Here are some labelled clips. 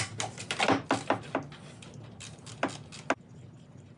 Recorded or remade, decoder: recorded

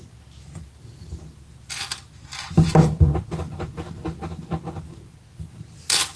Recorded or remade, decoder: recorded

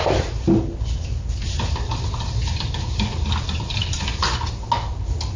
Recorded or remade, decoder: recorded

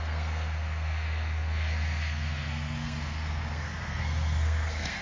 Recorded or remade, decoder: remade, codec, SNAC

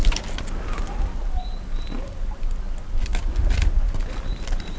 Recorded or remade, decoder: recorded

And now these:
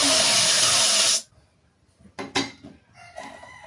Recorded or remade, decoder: recorded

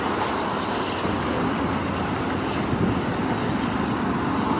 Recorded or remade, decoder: recorded